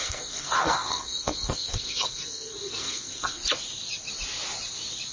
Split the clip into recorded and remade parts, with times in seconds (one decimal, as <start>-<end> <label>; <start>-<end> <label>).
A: 0.0-3.4 remade; 3.4-5.1 recorded